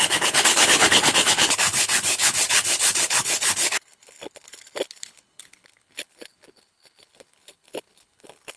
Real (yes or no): no